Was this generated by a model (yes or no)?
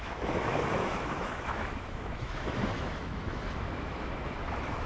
yes